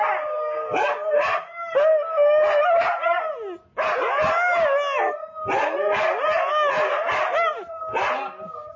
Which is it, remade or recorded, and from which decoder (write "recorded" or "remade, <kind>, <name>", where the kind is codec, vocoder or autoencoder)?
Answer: recorded